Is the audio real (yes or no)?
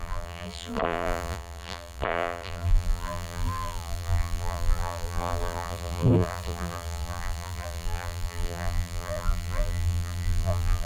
no